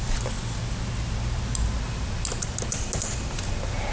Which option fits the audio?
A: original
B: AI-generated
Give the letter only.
A